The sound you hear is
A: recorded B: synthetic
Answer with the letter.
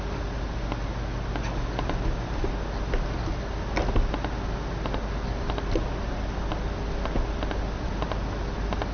A